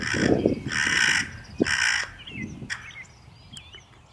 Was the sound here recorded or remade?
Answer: recorded